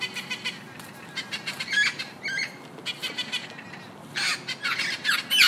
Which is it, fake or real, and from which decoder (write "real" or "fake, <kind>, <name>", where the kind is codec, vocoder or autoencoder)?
real